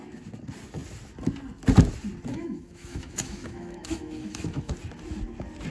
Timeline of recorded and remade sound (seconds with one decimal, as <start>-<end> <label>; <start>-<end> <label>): 0.0-2.3 recorded; 2.3-4.7 remade; 4.7-5.7 recorded